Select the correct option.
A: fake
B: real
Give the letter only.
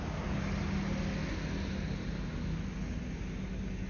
B